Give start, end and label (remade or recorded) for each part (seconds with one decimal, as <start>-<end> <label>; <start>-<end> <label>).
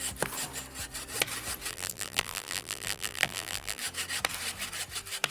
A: 0.0-1.7 recorded; 1.7-3.8 remade; 3.8-5.3 recorded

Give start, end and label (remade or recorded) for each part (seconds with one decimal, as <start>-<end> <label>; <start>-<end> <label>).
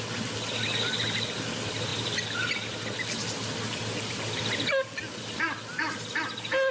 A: 0.0-6.7 recorded